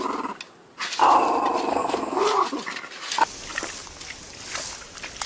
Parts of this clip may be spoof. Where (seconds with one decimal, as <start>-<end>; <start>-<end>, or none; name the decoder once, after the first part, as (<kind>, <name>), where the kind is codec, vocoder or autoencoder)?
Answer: 1.7-2.2 (codec, SNAC)